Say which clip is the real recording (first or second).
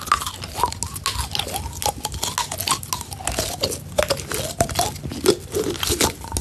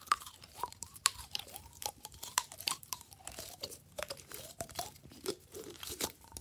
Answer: first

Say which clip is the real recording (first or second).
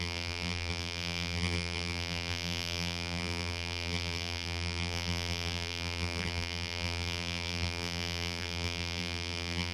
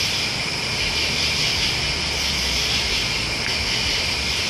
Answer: second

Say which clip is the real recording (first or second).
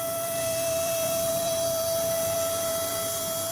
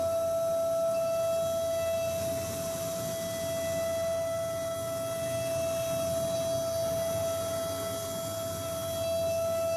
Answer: second